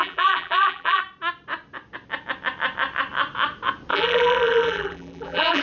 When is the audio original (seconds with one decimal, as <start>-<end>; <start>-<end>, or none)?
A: 1.0-3.9